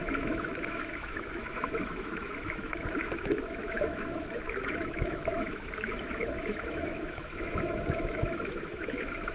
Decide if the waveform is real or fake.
fake